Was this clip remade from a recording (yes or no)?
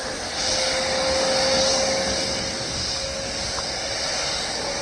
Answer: no